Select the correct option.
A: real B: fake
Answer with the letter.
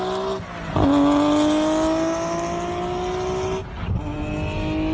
A